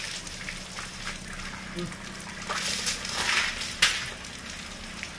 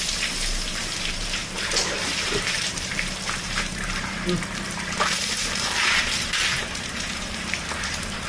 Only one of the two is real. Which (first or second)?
first